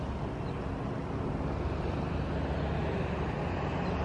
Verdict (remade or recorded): recorded